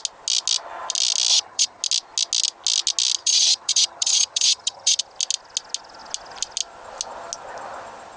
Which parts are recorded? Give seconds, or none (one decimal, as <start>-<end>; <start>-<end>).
0.0-1.3; 1.8-3.2; 5.0-8.2